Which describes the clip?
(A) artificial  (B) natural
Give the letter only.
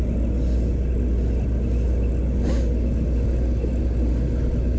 B